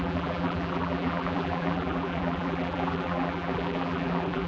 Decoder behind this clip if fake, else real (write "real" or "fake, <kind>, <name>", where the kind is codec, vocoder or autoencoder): fake, vocoder, BigVGAN v2